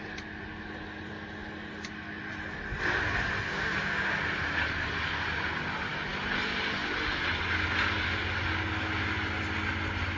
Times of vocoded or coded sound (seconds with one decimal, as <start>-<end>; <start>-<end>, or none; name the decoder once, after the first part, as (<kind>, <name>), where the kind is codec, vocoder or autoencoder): 3.5-4.1 (codec, DAC)

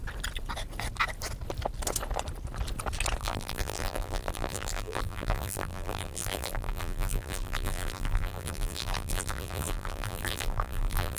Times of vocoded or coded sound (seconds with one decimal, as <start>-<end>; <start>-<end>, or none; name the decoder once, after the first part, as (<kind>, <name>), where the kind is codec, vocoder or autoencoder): 3.2-11.2 (vocoder, BigVGAN v2)

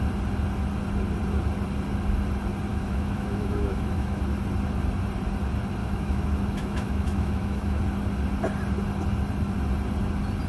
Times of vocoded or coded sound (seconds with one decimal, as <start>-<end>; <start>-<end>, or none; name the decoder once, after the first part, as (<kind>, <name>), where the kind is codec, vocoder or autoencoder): 2.7-4.2 (autoencoder, DAC-VAE); 5.8-7.8

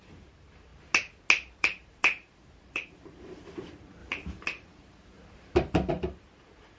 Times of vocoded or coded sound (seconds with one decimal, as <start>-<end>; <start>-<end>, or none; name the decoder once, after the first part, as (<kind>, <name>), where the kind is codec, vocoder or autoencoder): 0.0-0.7 (vocoder, BigVGAN v2); 1.6-6.8

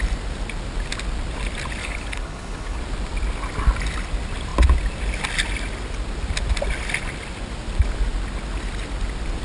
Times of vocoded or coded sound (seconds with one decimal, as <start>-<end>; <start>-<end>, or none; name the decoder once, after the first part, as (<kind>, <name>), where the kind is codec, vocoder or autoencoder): 1.8-2.8 (codec, HILCodec)

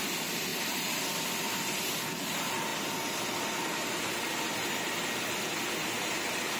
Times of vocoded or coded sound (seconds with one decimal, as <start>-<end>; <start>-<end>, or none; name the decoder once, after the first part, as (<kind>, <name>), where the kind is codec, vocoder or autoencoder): none

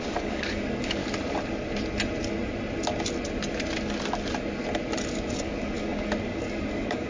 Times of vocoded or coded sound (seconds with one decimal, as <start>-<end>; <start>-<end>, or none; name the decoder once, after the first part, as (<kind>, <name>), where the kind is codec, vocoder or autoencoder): 0.0-1.0 (codec, DAC); 5.3-7.1

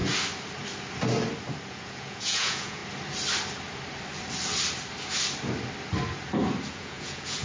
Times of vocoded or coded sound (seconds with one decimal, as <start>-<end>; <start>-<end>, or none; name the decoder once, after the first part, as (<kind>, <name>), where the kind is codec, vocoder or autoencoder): 1.7-2.8 (vocoder, Vocos); 6.7-7.4